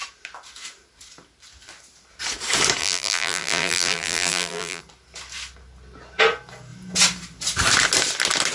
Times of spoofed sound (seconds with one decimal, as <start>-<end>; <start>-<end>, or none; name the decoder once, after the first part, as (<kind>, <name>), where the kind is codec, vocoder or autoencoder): 2.8-4.8 (vocoder, BigVGAN v2)